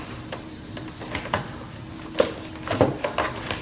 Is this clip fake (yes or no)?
no